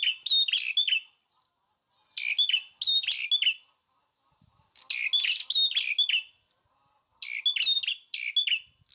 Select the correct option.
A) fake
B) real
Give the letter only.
B